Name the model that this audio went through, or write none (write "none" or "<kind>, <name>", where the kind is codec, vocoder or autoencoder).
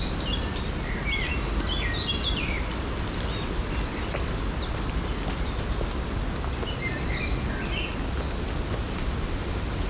none